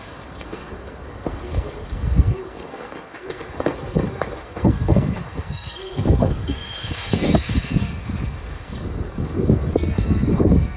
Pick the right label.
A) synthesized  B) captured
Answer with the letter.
A